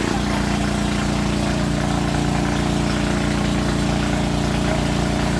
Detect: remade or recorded recorded